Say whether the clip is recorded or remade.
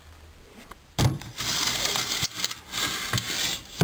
recorded